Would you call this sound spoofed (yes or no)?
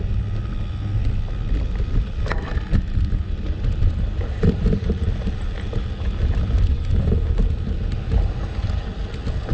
no